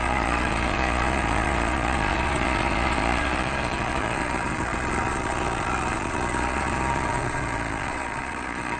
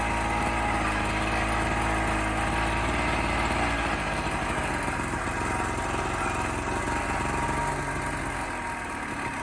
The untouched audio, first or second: second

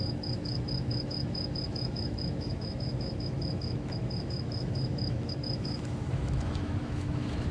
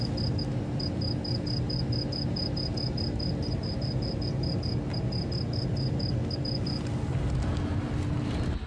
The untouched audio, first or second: second